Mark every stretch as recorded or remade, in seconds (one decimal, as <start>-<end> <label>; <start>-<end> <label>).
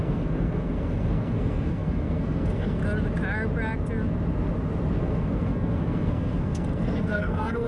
0.0-2.8 remade; 2.8-5.0 recorded; 5.0-7.7 remade